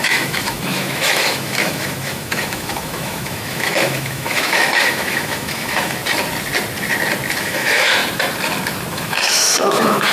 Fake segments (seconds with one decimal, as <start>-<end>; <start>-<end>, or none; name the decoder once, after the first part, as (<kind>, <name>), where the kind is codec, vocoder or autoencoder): 0.0-6.0 (autoencoder, DAC-VAE); 7.4-8.0; 8.9-10.1